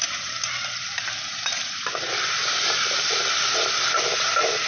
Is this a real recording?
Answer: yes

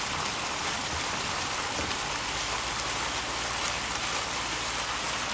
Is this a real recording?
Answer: yes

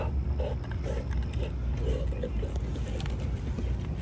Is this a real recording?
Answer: yes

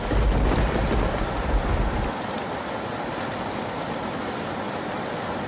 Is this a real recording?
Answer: yes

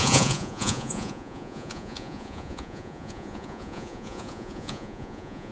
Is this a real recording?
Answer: no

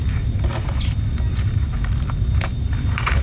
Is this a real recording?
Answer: yes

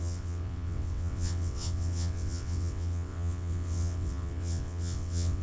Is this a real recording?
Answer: no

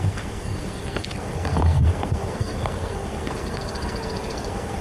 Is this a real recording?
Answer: no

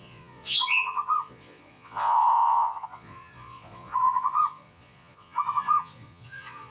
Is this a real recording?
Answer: no